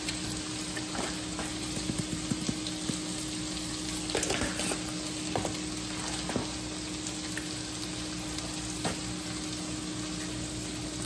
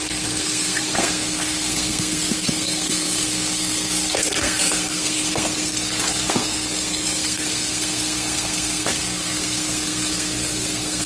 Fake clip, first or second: second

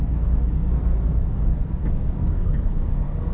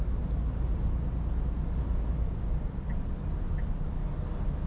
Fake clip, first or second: first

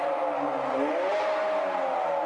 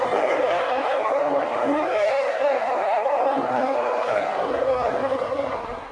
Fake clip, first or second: second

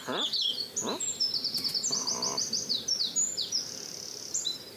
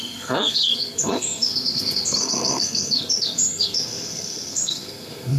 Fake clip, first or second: second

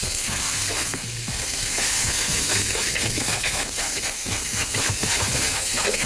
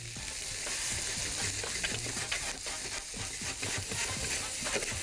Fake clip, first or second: first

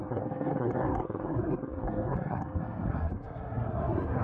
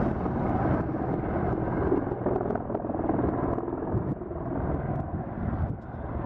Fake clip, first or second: first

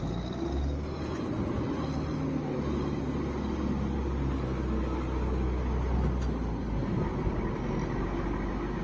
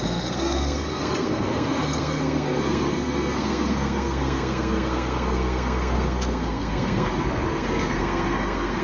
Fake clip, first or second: second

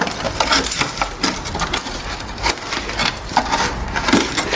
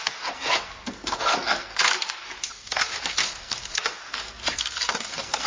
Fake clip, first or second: second